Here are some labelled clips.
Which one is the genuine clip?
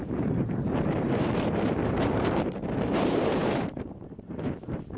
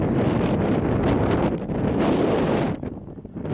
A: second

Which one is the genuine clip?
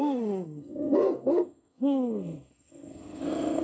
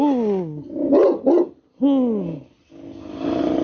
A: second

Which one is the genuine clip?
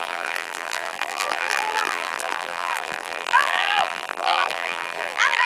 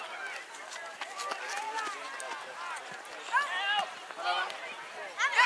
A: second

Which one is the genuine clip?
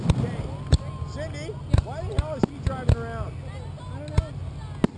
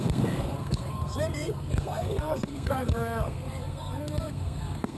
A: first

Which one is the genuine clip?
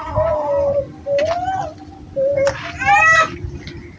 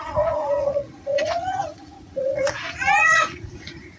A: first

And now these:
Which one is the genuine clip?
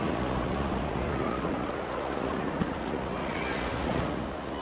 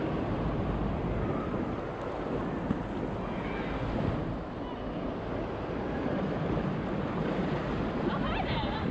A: second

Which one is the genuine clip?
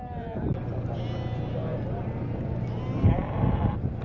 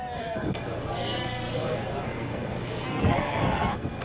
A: first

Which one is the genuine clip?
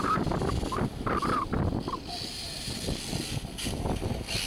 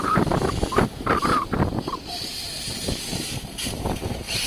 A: first